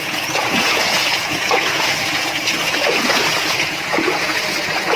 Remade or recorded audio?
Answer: remade